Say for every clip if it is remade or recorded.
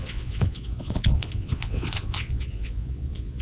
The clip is remade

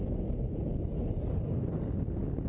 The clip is recorded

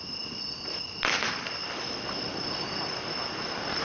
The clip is recorded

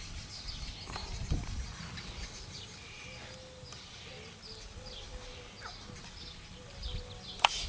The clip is recorded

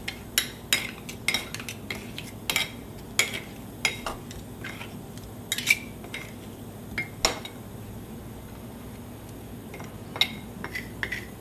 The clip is recorded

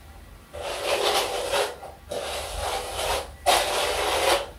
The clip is recorded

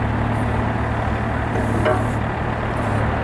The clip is recorded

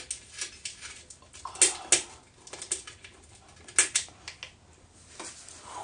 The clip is recorded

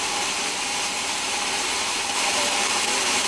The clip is remade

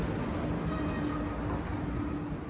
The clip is recorded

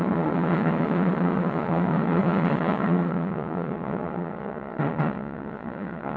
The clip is remade